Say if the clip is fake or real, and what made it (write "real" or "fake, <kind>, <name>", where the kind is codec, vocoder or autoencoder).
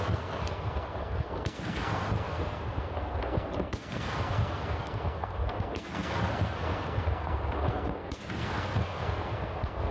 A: fake, codec, SNAC